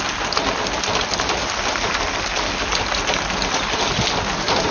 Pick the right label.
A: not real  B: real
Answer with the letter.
B